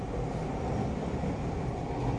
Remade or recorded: recorded